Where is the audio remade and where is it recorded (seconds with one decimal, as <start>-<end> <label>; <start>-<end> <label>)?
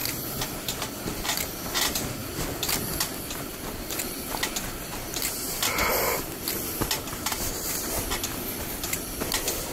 0.0-9.7 remade